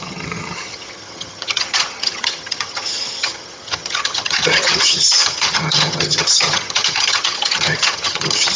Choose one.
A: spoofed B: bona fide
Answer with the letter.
A